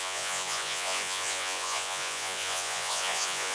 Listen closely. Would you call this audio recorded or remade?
remade